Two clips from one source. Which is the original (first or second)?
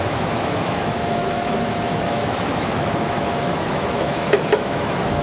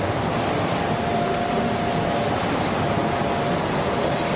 second